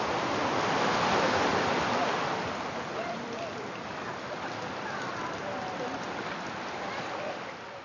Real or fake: real